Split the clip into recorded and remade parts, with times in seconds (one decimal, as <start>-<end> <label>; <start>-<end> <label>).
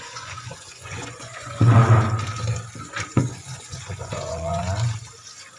0.0-1.8 remade; 1.8-3.1 recorded; 3.1-4.6 remade; 4.6-5.6 recorded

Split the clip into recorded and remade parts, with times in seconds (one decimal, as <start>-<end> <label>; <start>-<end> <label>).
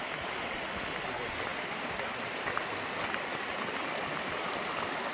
0.0-5.1 recorded